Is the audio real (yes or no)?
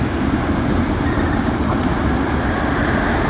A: yes